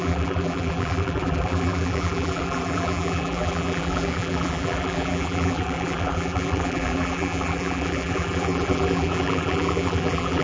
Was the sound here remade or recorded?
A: remade